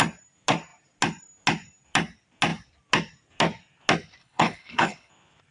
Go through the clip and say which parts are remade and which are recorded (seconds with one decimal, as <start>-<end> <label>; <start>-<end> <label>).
0.0-4.2 recorded; 4.2-5.1 remade; 5.1-5.5 recorded